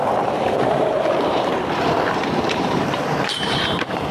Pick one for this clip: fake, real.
fake